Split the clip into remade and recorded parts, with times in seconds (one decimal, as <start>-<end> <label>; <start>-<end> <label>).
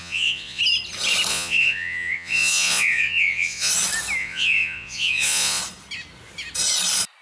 0.0-0.6 remade; 0.6-1.3 recorded; 1.3-3.7 remade; 3.7-4.2 recorded; 4.2-5.6 remade; 5.6-7.2 recorded